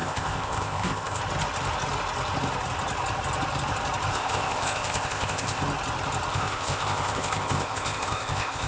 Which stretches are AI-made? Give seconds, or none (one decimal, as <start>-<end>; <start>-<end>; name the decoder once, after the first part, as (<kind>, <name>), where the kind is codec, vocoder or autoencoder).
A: 0.0-1.2 (codec, ZipCodec); 4.1-5.6; 6.3-8.7